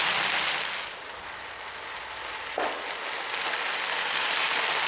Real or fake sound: real